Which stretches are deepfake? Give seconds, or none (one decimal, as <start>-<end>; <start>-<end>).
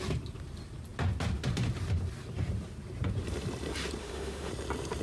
4.0-4.5